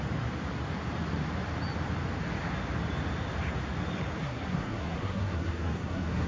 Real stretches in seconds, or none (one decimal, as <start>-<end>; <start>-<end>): 0.0-4.2

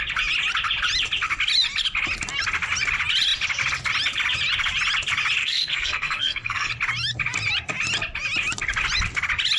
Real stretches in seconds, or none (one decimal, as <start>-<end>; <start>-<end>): 0.0-5.4; 6.7-9.6